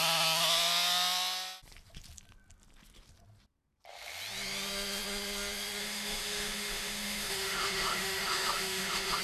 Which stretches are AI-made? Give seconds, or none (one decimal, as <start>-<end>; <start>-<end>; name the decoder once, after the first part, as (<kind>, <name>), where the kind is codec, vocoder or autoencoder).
5.8-9.2 (autoencoder, DAC-VAE)